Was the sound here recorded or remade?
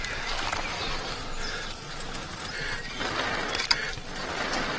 recorded